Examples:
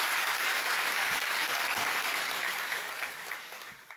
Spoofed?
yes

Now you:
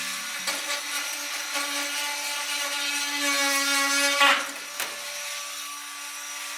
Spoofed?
no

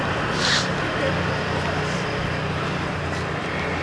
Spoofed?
no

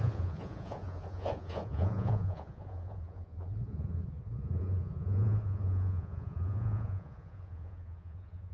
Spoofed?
yes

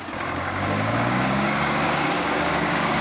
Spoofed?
yes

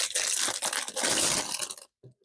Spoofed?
no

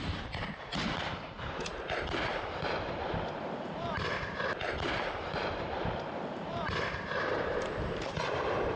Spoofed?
yes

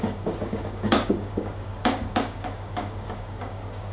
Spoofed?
yes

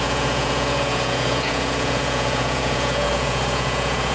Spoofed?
yes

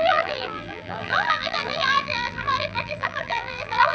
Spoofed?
yes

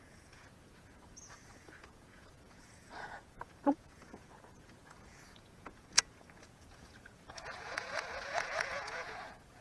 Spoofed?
yes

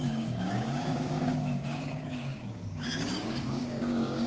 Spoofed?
yes